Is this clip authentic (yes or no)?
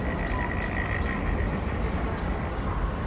yes